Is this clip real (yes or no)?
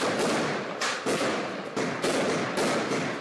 yes